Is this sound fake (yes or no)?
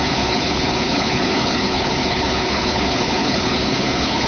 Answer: yes